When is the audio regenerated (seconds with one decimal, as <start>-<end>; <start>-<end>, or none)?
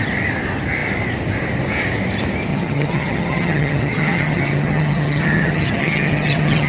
2.5-6.7